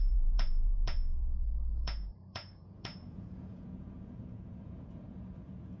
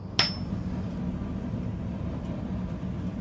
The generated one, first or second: first